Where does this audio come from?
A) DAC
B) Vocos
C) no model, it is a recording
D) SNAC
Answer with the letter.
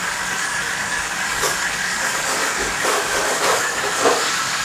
A